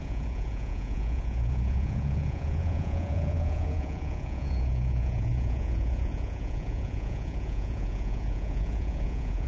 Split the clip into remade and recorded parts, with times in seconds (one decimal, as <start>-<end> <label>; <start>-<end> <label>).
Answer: 0.0-9.5 remade